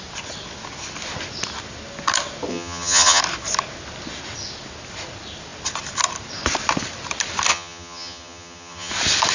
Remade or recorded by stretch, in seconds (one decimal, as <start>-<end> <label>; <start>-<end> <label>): 0.0-2.5 recorded; 2.5-3.2 remade; 3.2-7.5 recorded; 7.5-8.9 remade; 8.9-9.3 recorded